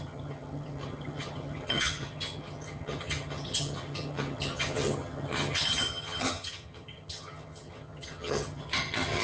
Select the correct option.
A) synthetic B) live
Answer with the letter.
A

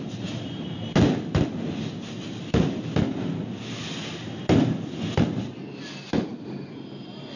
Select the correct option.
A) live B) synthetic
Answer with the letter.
A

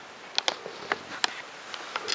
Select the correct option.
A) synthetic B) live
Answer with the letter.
B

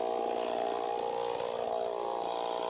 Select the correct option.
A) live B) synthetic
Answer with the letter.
A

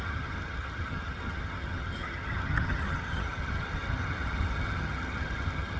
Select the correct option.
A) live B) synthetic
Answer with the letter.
B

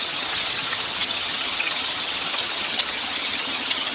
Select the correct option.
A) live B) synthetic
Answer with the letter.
B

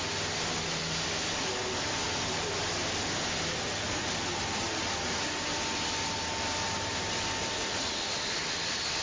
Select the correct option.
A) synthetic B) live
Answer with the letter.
B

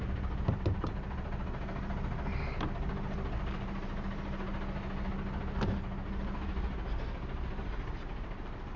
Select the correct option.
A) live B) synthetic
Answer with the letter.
A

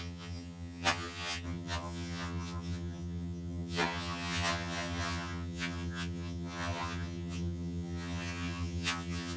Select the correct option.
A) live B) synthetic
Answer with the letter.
B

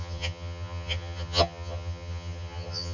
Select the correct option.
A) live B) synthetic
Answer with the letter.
B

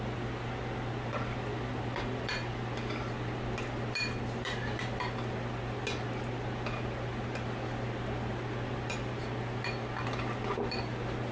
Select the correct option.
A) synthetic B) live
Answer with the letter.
B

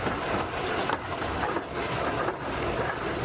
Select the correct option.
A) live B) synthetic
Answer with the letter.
A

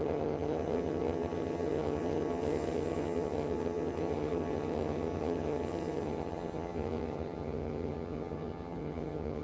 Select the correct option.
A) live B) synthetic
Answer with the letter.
B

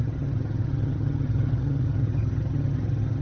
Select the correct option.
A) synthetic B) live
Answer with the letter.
A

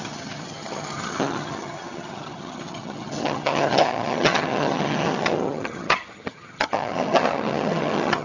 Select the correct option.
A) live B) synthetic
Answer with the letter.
B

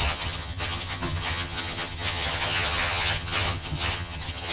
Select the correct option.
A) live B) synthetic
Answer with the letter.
B